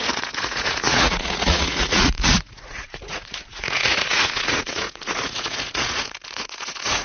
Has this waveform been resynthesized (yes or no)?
yes